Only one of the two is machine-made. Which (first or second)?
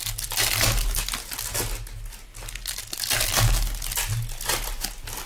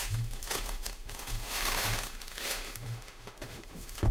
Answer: second